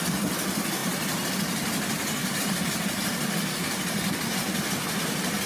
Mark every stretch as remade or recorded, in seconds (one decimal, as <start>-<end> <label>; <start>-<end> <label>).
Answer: 0.0-0.8 recorded; 0.8-1.3 remade; 1.3-2.2 recorded; 2.2-3.8 remade; 3.8-4.3 recorded; 4.3-5.5 remade